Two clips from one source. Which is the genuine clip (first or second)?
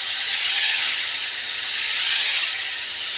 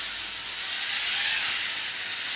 second